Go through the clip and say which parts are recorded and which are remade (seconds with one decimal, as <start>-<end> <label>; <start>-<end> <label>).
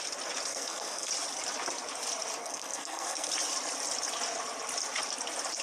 0.0-0.5 recorded; 0.5-1.1 remade; 1.1-2.4 recorded; 2.4-3.3 remade; 3.3-5.6 recorded